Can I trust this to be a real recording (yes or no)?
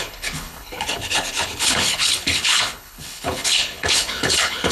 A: no